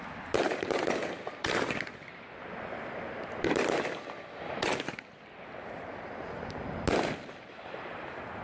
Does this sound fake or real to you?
real